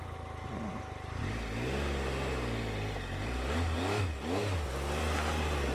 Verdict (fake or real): real